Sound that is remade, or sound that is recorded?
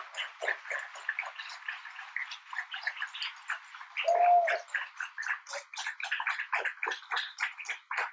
recorded